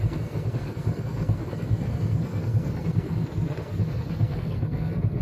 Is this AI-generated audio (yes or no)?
yes